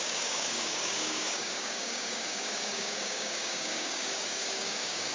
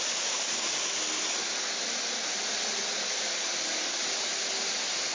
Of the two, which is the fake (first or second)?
first